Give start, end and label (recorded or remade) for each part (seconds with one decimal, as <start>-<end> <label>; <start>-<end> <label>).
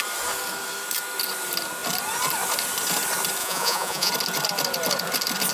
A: 0.0-3.4 recorded; 3.4-4.1 remade; 4.1-5.5 recorded